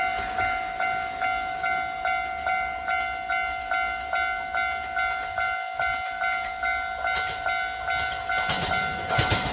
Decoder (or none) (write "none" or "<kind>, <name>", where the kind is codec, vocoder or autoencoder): none